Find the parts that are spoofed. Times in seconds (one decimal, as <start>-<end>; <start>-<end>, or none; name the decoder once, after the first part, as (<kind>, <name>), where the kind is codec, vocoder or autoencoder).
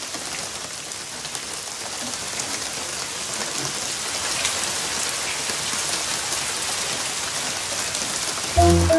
none